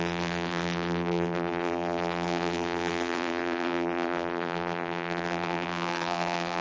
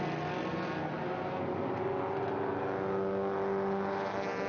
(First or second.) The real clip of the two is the second